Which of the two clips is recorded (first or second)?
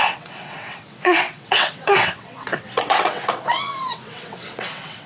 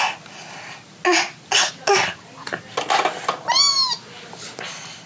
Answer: second